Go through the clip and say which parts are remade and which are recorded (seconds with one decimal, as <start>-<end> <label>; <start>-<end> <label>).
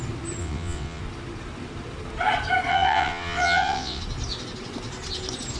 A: 0.0-0.4 recorded; 0.4-1.0 remade; 1.0-2.7 recorded; 2.7-4.0 remade; 4.0-5.6 recorded